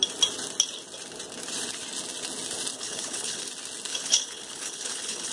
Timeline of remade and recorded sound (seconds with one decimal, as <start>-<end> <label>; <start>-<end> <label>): 0.0-2.7 recorded; 2.7-3.5 remade; 3.5-3.9 recorded; 3.9-5.3 remade